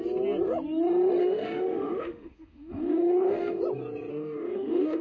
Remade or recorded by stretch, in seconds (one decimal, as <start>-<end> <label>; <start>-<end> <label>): 0.0-1.2 recorded; 1.2-3.6 remade; 3.6-4.1 recorded; 4.1-5.0 remade